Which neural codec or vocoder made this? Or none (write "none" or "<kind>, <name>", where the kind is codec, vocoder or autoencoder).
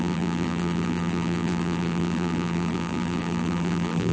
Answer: vocoder, BigVGAN v2